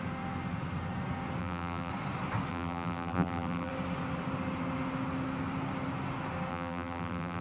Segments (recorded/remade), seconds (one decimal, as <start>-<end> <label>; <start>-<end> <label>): 0.0-1.4 recorded; 1.4-1.9 remade; 1.9-2.5 recorded; 2.5-3.7 remade; 3.7-6.5 recorded; 6.5-7.4 remade